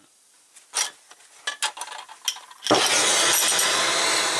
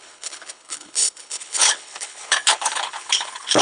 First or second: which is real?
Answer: first